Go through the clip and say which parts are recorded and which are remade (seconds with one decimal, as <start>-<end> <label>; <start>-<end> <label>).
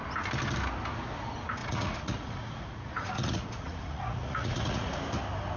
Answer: 0.0-1.6 recorded; 1.6-5.0 remade; 5.0-5.6 recorded